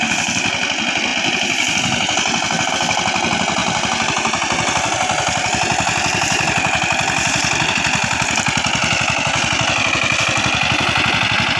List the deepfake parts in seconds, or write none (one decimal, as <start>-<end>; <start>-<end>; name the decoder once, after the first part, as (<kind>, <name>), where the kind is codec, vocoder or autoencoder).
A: none